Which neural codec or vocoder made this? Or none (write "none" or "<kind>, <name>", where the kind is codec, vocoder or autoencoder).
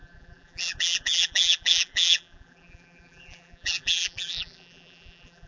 vocoder, BigVGAN v2